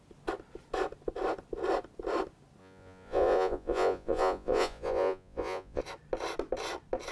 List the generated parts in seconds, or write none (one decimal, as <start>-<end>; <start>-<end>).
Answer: 2.6-5.8